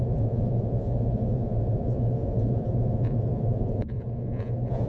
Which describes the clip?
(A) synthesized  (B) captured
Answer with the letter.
A